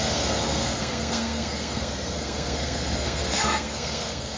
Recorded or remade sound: remade